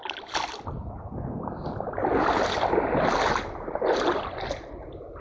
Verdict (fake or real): real